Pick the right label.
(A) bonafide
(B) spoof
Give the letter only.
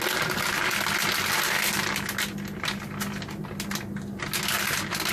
A